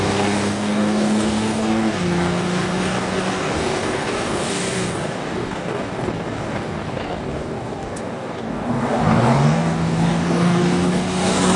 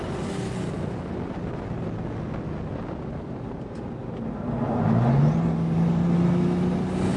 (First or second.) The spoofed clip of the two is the first